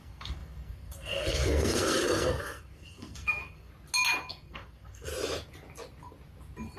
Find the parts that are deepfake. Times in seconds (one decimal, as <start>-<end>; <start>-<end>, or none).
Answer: 0.0-3.7; 4.3-5.1